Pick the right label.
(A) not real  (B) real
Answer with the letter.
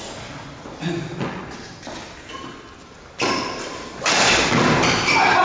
B